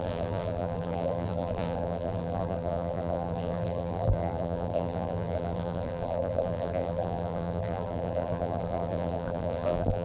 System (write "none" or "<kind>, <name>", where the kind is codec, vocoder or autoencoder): vocoder, BigVGAN v2